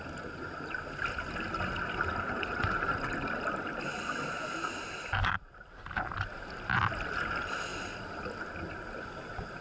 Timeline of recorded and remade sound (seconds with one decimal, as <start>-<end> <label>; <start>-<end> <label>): 0.0-9.6 recorded